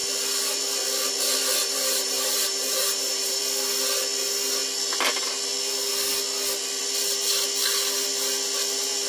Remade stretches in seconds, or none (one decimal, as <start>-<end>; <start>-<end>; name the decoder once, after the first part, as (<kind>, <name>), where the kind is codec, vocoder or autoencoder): 1.6-3.4 (vocoder, BigVGAN v2)